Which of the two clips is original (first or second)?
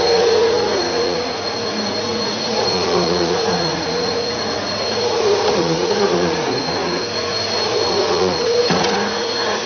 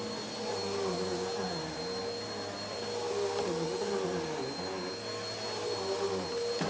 second